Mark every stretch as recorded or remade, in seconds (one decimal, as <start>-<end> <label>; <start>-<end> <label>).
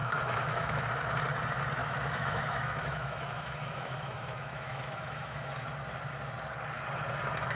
0.0-0.9 remade; 0.9-1.8 recorded; 1.8-5.7 remade; 5.7-7.6 recorded